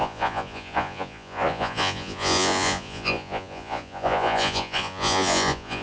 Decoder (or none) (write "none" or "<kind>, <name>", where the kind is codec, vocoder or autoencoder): vocoder, Vocos